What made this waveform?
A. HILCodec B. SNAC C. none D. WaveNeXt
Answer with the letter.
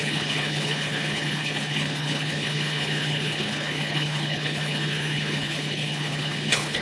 A